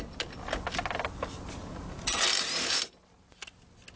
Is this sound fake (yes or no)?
no